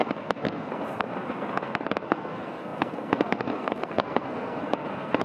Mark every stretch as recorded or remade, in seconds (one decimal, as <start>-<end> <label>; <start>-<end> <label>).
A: 0.0-5.2 remade